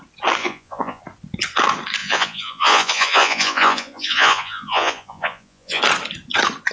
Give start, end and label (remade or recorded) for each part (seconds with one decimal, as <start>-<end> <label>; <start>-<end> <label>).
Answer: 0.0-0.4 recorded; 0.4-1.0 remade; 1.0-2.0 recorded; 2.0-5.8 remade; 5.8-6.7 recorded